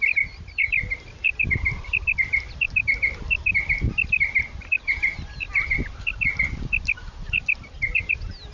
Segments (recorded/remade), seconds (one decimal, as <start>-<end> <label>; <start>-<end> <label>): 0.0-8.5 recorded